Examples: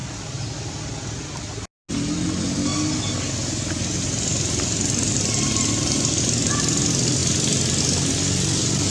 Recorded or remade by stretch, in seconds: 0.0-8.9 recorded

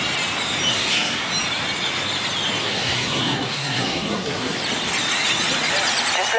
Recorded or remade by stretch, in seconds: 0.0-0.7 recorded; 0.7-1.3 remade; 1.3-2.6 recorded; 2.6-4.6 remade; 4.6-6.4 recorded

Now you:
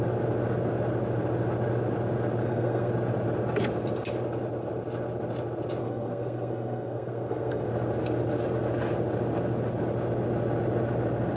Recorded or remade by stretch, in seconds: 0.0-2.4 recorded; 2.4-2.9 remade; 2.9-5.8 recorded; 5.8-7.7 remade; 7.7-11.4 recorded

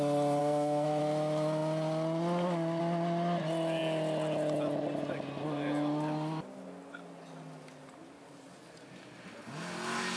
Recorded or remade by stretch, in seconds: 0.0-0.4 recorded; 0.4-1.0 remade; 1.0-10.2 recorded

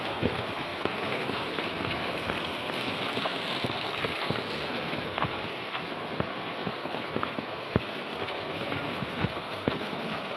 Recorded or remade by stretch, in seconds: 0.0-10.4 remade